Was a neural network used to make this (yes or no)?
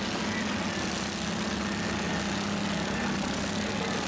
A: no